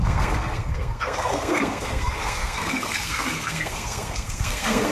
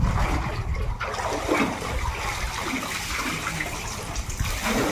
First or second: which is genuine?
second